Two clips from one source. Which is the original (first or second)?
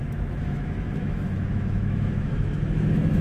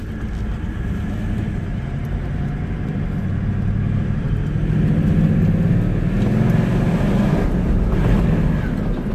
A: second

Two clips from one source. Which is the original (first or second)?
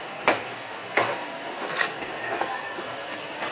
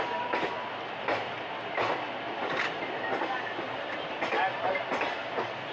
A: second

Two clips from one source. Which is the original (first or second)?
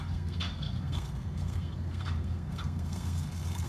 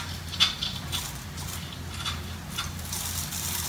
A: second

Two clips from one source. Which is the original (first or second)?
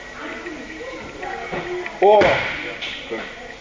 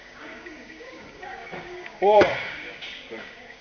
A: first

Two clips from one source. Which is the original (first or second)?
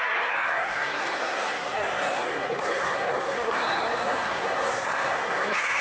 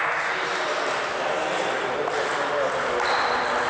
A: second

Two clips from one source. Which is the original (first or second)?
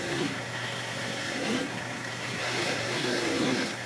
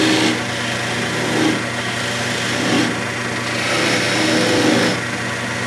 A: second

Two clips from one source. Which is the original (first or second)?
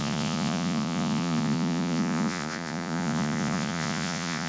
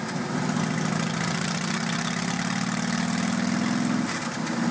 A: second